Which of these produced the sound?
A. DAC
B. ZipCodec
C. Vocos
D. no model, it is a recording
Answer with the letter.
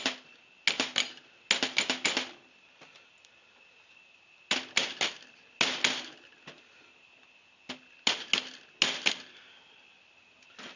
D